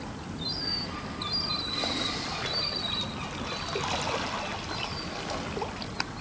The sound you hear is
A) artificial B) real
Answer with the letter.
B